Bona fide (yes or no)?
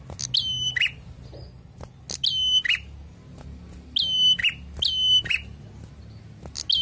yes